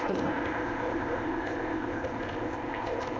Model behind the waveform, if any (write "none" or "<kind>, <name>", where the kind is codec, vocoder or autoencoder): codec, ZipCodec